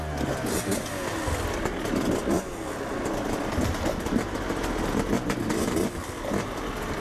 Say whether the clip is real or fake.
real